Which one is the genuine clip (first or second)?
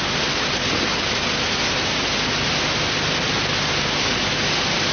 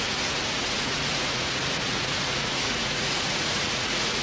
first